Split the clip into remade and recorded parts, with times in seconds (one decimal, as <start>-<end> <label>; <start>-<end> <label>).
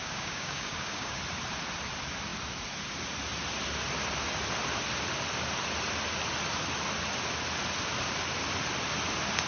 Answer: 0.0-1.2 remade; 1.2-9.5 recorded